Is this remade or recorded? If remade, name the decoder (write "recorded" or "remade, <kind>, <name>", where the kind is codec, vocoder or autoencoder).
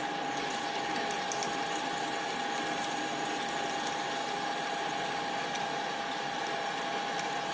recorded